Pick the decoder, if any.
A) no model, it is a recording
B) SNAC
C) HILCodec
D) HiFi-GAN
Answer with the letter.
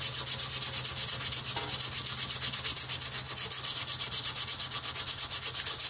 A